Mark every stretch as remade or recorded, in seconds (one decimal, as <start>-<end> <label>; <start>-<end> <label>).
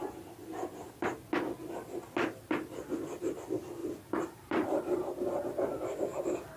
0.0-3.8 recorded; 3.8-5.7 remade; 5.7-6.6 recorded